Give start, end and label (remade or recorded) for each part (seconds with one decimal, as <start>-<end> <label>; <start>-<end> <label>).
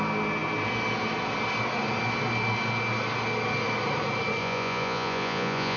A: 0.0-4.4 recorded; 4.4-5.8 remade